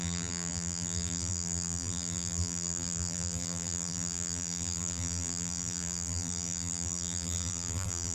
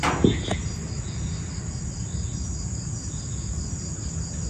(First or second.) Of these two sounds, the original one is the second